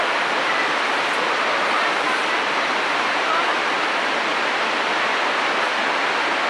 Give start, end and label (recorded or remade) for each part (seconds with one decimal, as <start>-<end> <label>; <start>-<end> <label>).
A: 0.0-2.2 recorded; 2.2-5.8 remade; 5.8-6.5 recorded